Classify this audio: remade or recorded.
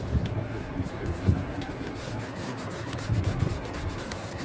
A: remade